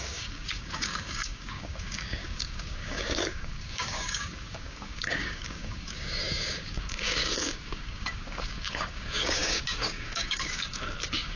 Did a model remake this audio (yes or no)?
yes